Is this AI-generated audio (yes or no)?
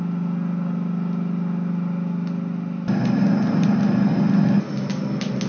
no